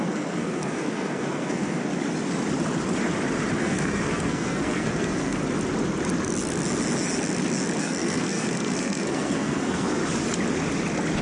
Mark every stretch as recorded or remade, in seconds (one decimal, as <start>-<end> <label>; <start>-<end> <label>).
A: 0.0-1.8 remade; 1.8-3.6 recorded; 3.6-5.4 remade; 5.4-7.8 recorded; 7.8-10.0 remade; 10.0-11.2 recorded